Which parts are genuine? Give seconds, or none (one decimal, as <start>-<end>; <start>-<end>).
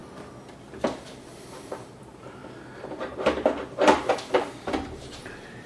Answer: 0.0-1.5; 2.4-4.3